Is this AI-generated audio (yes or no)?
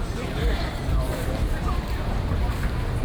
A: yes